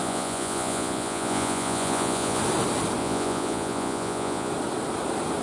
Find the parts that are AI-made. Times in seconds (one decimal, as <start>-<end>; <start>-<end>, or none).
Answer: 0.0-2.4; 3.0-4.5